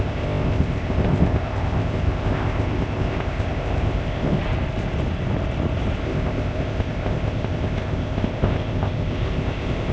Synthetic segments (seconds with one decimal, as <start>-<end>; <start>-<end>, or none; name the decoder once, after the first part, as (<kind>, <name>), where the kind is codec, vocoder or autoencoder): 0.0-4.4 (codec, ZipCodec); 6.0-9.9